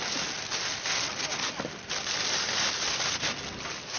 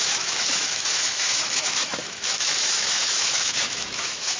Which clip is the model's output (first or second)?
second